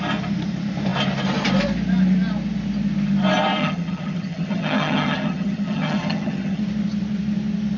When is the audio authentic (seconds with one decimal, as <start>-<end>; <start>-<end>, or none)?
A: 0.0-3.6; 6.6-7.8